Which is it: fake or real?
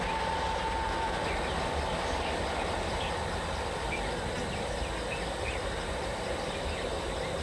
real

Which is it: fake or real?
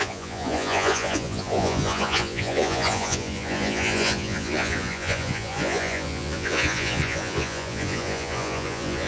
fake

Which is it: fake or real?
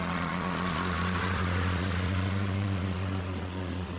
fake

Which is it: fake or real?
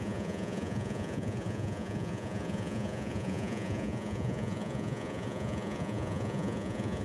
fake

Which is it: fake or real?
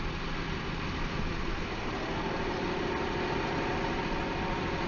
real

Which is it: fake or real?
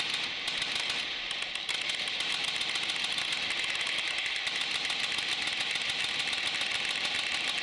real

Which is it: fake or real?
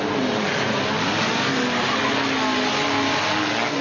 real